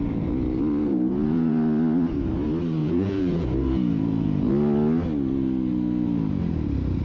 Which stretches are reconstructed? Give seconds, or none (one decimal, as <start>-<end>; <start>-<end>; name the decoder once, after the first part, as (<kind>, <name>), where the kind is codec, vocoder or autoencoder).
0.8-1.6 (vocoder, Vocos); 2.8-4.5